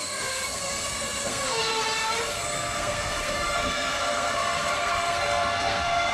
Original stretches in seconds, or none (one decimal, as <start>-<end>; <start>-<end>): 1.7-2.3